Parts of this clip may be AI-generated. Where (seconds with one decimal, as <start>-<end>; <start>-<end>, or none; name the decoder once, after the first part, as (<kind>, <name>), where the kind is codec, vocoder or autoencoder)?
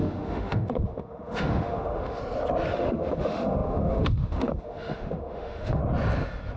0.0-2.2 (autoencoder, DAC-VAE); 2.7-5.8